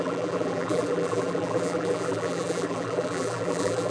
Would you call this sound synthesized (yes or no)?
yes